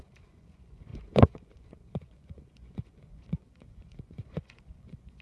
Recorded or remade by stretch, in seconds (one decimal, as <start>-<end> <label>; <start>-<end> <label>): 0.0-5.2 remade